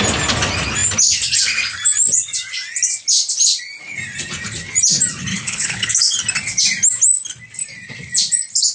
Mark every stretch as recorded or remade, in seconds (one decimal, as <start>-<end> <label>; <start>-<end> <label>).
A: 0.0-5.3 recorded; 5.3-5.9 remade; 5.9-8.7 recorded